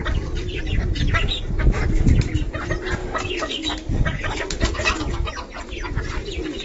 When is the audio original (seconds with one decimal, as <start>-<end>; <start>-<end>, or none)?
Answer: 0.0-3.0; 5.3-6.6